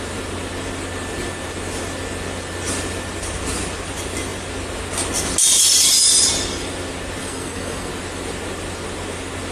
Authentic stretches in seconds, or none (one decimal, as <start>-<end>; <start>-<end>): 0.0-7.2; 7.9-9.5